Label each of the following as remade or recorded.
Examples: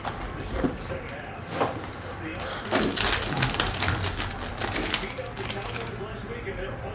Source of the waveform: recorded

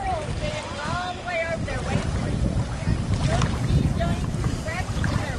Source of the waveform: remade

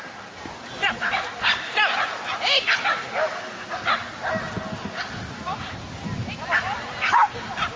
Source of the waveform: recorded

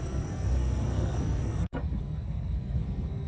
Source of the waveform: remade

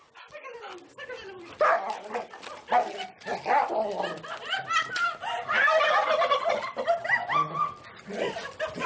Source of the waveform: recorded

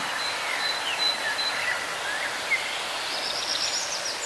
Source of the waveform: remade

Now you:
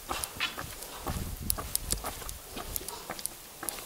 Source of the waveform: recorded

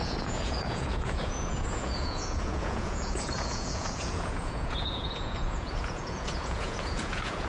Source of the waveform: remade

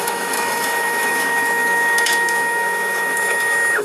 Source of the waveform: remade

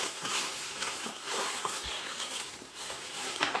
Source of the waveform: remade